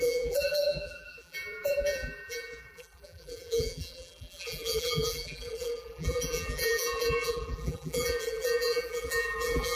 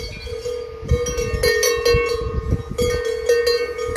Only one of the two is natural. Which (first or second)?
second